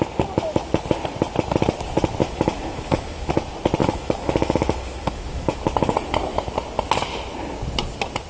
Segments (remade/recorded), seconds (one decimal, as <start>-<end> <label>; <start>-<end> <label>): 0.0-2.2 recorded; 2.2-3.3 remade; 3.3-3.8 recorded; 3.8-5.6 remade; 5.6-8.3 recorded